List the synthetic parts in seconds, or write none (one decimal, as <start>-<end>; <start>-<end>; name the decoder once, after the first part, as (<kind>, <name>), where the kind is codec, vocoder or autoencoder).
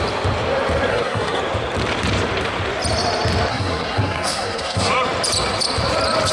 0.9-1.4 (codec, SNAC); 3.5-4.9